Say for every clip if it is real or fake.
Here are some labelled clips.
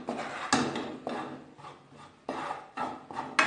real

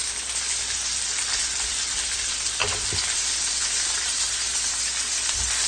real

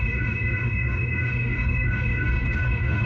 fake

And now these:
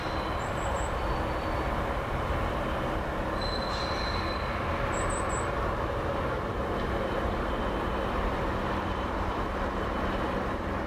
real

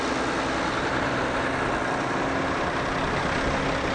real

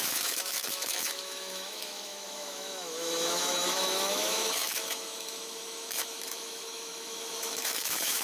fake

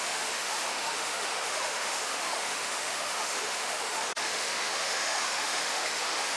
fake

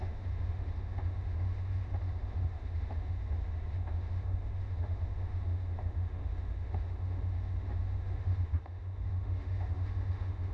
fake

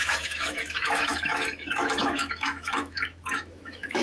fake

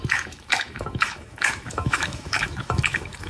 fake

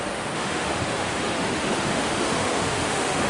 fake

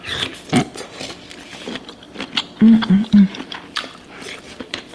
real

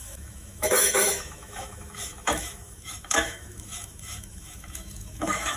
fake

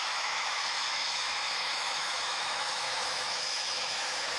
fake